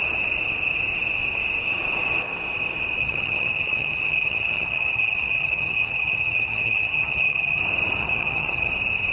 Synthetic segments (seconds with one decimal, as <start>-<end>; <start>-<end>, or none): 3.0-7.6; 8.0-8.7